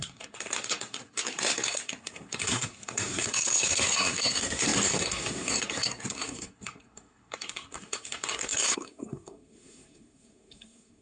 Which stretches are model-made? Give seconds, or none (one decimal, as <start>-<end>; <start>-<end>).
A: 0.0-11.0